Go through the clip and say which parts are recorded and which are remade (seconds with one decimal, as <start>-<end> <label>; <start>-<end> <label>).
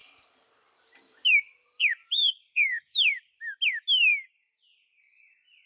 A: 0.0-3.4 remade; 3.4-5.7 recorded